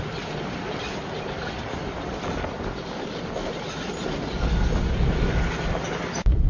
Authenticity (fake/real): real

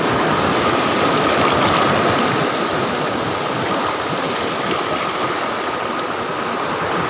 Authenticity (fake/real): real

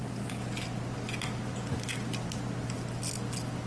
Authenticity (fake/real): real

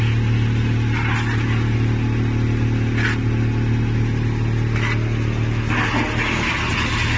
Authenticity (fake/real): real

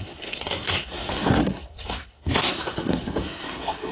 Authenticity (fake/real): fake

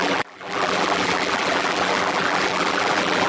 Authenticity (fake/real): fake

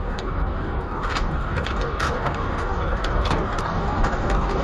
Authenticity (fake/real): fake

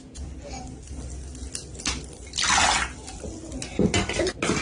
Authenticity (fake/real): real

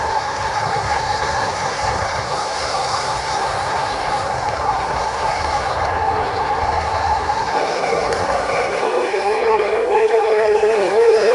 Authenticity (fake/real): fake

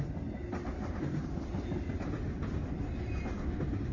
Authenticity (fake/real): real